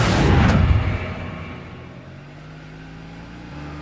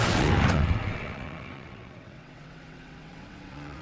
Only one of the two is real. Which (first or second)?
first